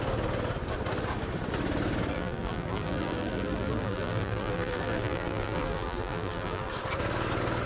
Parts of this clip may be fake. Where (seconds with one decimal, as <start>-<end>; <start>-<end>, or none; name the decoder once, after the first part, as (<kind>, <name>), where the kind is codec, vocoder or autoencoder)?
2.1-6.7 (vocoder, BigVGAN v2)